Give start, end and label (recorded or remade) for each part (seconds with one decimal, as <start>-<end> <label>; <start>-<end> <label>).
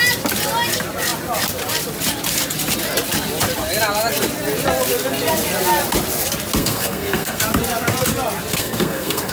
0.0-6.6 recorded; 6.6-7.4 remade; 7.4-8.5 recorded; 8.5-9.3 remade